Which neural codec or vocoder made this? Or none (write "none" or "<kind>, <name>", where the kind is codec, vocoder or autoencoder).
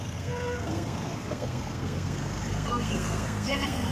codec, SNAC